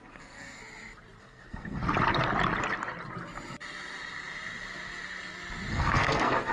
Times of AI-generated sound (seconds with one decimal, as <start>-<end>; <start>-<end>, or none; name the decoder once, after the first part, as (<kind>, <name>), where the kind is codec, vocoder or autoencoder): 0.0-0.6 (codec, SNAC); 1.2-1.8; 5.7-6.5